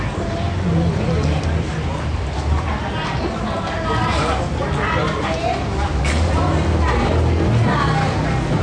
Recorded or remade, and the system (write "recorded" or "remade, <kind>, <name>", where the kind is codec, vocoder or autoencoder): recorded